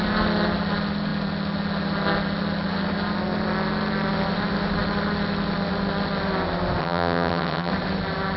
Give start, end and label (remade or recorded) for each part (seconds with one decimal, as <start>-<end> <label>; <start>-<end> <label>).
0.0-6.8 recorded; 6.8-7.7 remade; 7.7-8.4 recorded